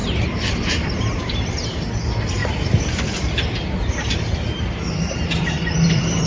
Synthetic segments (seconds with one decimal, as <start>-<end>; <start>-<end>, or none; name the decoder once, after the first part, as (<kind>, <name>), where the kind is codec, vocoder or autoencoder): 0.0-1.0 (vocoder, BigVGAN v2); 2.4-6.3